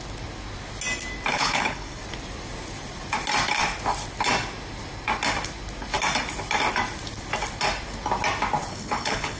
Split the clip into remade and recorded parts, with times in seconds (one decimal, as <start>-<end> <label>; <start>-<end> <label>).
0.0-1.3 recorded; 1.3-2.0 remade; 2.0-8.7 recorded; 8.7-9.4 remade